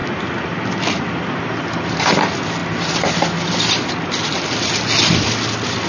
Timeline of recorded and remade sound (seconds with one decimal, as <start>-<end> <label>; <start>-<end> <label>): 0.0-5.9 recorded